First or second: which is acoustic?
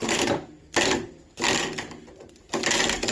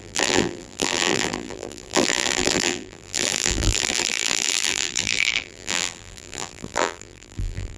first